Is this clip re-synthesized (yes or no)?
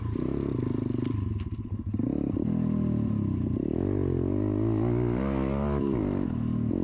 no